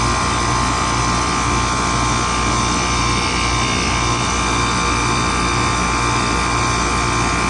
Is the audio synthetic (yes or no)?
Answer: no